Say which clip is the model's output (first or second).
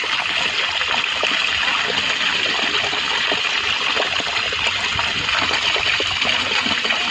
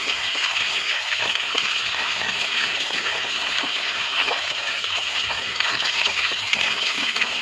second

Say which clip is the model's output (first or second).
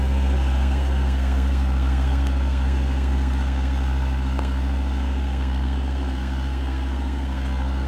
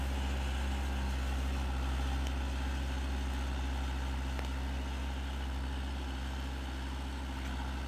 first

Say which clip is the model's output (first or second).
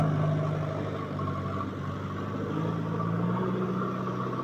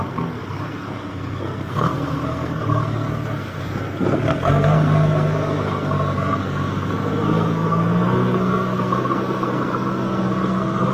second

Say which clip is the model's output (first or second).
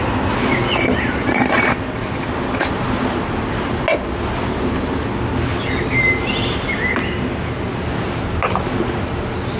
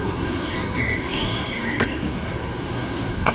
second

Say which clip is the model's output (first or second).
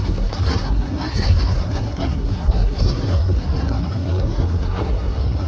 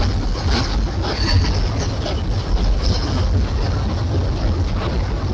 first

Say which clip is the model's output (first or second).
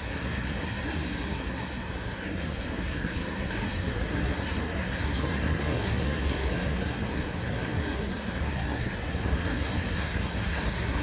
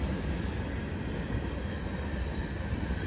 first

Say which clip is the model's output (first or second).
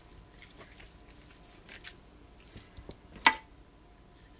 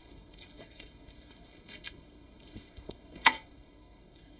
second